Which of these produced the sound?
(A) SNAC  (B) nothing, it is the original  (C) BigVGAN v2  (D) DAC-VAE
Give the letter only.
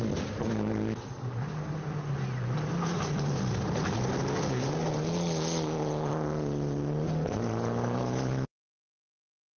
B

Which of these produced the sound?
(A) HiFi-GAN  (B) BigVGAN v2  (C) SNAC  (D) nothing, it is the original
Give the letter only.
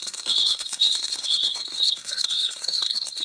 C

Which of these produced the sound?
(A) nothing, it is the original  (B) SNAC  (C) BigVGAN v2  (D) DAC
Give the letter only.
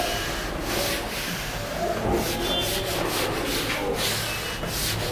A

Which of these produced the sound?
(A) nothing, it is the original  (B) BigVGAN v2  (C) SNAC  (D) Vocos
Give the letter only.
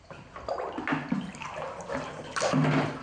A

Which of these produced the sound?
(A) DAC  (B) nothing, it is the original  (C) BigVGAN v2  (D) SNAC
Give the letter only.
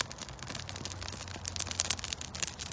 B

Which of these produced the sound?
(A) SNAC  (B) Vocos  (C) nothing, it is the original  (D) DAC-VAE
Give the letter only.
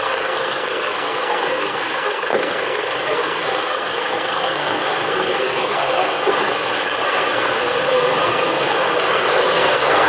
A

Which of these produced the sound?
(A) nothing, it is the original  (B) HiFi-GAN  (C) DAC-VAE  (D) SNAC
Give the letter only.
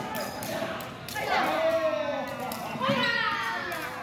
A